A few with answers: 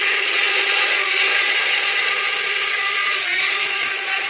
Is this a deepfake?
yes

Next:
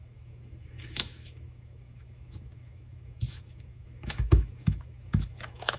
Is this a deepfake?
yes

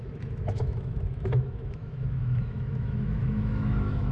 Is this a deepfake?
yes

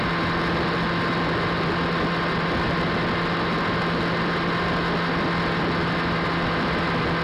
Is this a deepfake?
no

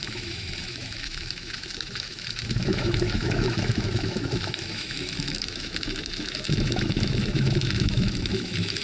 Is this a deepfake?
yes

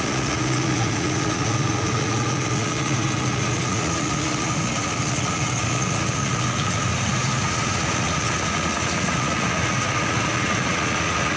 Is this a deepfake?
yes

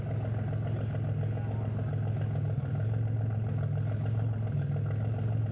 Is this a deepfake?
no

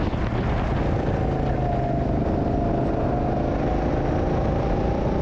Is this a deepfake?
no